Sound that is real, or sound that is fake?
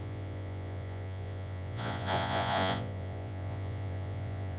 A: fake